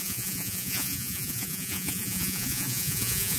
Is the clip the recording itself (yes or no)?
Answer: no